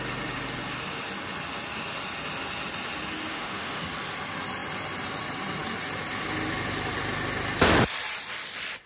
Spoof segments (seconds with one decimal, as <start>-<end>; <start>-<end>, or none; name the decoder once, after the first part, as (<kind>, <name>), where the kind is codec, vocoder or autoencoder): 3.3-3.8 (autoencoder, DAC-VAE)